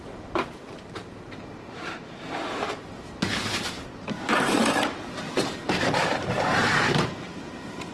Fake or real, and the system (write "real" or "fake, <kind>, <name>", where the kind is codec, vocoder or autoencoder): fake, vocoder, BigVGAN v2